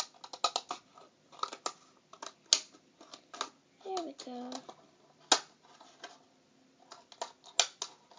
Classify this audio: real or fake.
real